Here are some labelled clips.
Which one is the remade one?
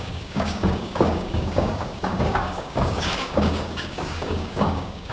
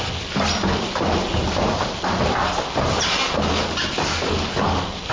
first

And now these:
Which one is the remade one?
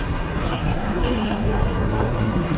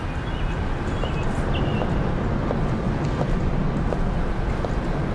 first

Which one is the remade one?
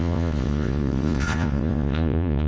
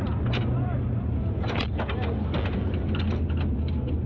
first